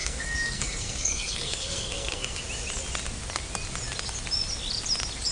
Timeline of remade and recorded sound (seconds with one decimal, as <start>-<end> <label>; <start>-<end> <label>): 0.0-2.4 remade; 2.4-5.3 recorded